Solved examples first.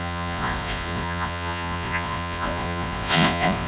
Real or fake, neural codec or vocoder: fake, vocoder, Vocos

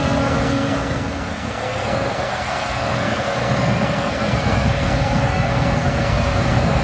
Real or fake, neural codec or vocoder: fake, codec, SNAC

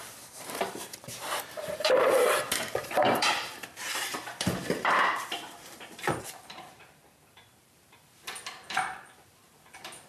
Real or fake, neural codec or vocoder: fake, vocoder, BigVGAN v2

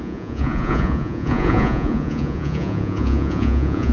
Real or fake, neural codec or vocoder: fake, vocoder, Vocos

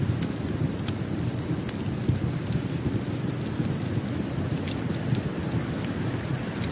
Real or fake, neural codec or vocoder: real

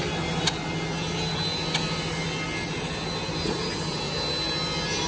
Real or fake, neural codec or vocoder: real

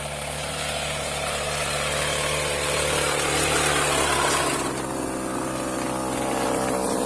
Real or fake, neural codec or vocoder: real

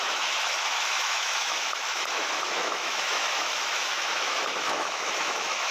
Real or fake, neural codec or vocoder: fake, autoencoder, DAC-VAE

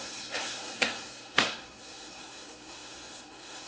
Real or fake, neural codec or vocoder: fake, codec, SNAC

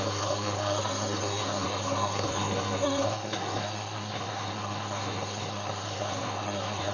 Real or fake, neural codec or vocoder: fake, codec, SNAC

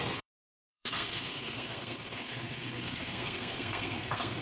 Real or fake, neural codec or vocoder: fake, codec, SNAC